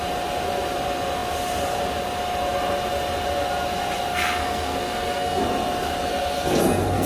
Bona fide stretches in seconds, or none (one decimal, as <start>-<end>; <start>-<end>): 0.0-4.1; 5.4-6.1